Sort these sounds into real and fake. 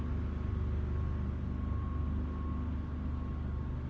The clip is real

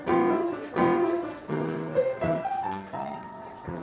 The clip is fake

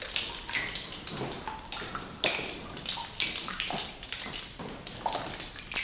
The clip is real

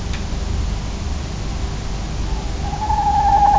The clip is real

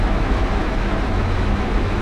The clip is fake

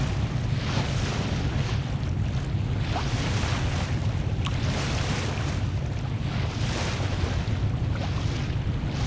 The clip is real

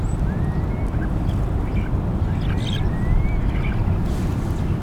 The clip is real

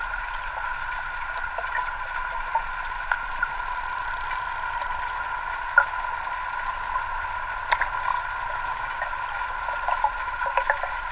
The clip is real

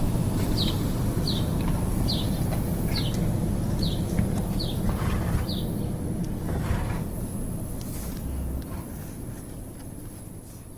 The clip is real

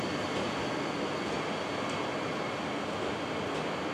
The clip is real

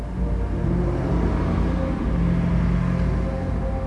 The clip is real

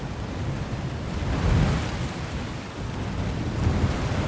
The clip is real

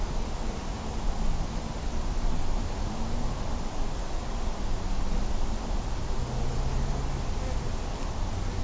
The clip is real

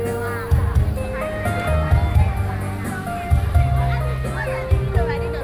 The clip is real